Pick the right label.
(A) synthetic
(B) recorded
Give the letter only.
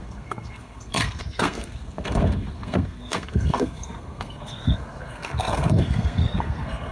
A